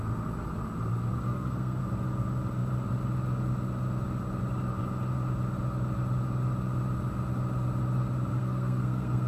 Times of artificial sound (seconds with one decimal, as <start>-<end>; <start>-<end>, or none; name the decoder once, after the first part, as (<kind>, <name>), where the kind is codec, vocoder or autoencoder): 1.1-1.8 (codec, SNAC); 8.3-9.3